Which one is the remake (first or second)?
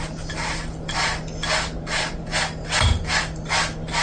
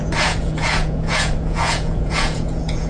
second